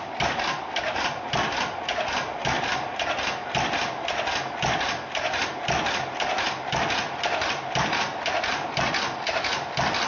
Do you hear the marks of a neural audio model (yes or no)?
no